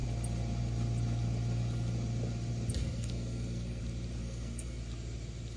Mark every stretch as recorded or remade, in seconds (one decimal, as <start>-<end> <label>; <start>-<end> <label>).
0.0-2.8 recorded; 2.8-3.8 remade; 3.8-4.2 recorded; 4.2-4.8 remade; 4.8-5.6 recorded